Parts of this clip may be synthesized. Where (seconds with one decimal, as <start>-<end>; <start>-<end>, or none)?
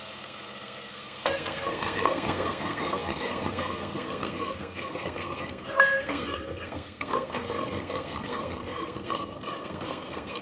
0.0-10.4